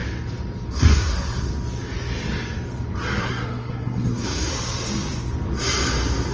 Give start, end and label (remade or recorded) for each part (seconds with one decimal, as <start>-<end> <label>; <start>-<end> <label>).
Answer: 0.0-0.7 recorded; 0.7-1.5 remade; 1.5-3.2 recorded; 3.2-4.5 remade; 4.5-6.3 recorded